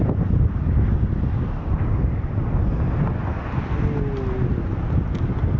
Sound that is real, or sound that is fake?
real